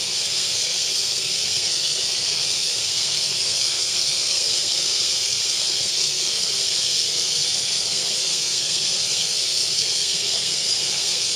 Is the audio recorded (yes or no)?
no